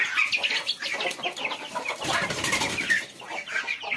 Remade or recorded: recorded